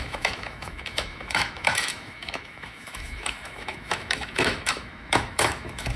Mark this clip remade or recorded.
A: remade